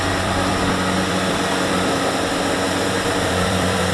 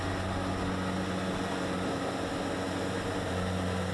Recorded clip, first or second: second